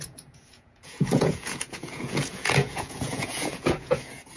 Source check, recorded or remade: remade